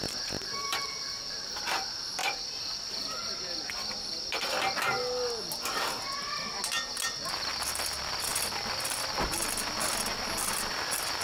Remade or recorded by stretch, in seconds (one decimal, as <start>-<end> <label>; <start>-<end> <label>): 0.0-0.6 recorded; 0.6-1.6 remade; 1.6-2.2 recorded; 2.2-3.3 remade; 3.3-11.2 recorded